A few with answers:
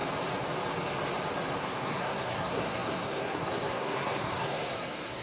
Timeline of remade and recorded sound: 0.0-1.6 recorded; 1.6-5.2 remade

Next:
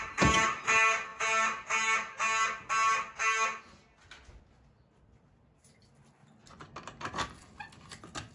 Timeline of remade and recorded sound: 0.0-8.3 recorded

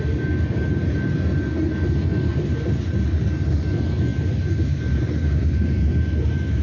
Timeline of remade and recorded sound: 0.0-6.6 recorded

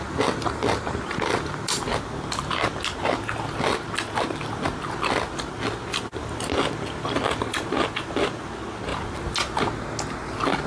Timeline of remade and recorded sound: 0.0-10.7 recorded

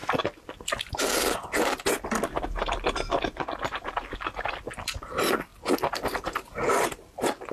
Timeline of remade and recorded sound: 0.0-7.5 recorded

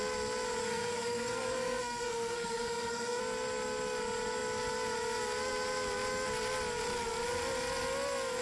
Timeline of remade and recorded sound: 0.0-0.6 recorded; 0.6-3.2 remade; 3.2-8.4 recorded

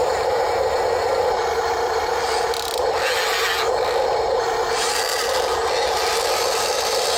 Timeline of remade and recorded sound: 0.0-7.2 recorded

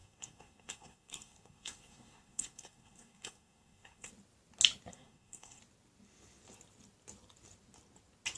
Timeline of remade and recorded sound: 0.0-4.1 remade; 4.1-4.9 recorded; 4.9-5.6 remade; 5.6-8.4 recorded